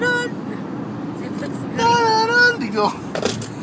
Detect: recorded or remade recorded